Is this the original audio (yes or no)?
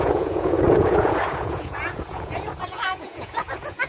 no